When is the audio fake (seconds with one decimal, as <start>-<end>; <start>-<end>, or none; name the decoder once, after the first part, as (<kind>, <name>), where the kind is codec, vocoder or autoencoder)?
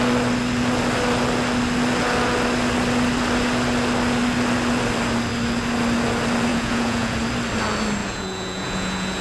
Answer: 6.5-7.2 (vocoder, Vocos); 8.0-9.2